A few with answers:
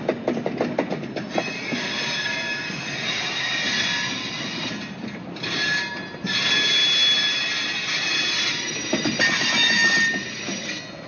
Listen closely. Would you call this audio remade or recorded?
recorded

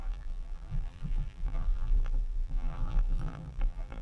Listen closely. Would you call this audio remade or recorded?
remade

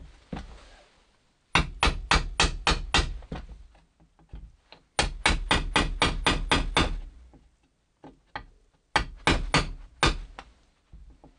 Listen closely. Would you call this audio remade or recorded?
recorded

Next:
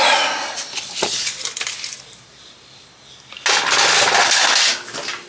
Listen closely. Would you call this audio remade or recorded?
recorded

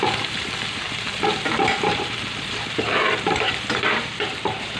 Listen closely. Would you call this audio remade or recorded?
remade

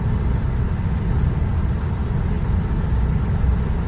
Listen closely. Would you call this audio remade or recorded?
recorded